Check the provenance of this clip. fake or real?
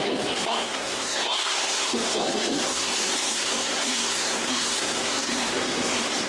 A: fake